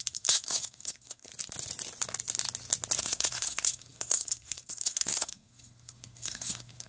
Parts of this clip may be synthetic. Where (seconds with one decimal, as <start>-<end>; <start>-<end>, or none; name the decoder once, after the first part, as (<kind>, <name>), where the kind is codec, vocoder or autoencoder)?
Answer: 0.0-1.3 (codec, SNAC); 3.0-6.9

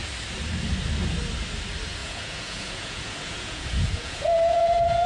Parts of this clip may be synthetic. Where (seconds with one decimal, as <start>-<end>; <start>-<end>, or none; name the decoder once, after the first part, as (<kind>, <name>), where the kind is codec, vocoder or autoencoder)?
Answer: 2.0-5.1 (vocoder, Vocos)

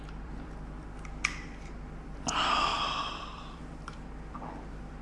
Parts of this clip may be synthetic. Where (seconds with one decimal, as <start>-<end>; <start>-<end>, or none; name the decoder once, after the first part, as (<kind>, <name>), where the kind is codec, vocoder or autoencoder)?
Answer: 0.0-5.0 (vocoder, BigVGAN v2)

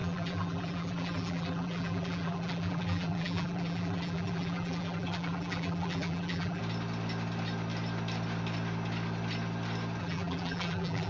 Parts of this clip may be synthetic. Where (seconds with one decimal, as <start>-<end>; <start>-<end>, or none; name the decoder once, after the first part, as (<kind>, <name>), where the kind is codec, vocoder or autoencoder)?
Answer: 0.0-6.6 (vocoder, BigVGAN v2); 10.0-11.1

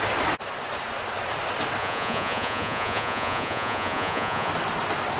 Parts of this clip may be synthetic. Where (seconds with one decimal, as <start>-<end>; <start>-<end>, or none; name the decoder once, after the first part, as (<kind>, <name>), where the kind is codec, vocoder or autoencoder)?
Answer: 1.8-4.5 (vocoder, Vocos)

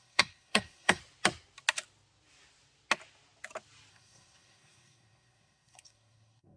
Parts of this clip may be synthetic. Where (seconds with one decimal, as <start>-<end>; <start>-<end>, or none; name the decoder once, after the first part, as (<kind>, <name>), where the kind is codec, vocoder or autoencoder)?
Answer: 0.0-1.0 (codec, SNAC); 3.9-6.6

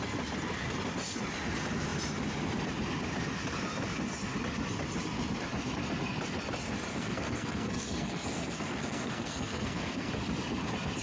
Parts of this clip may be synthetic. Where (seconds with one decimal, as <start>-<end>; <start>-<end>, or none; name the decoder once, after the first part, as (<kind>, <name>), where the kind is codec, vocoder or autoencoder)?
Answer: 6.9-10.1 (codec, SNAC)